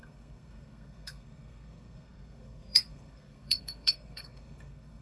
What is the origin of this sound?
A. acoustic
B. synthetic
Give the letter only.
B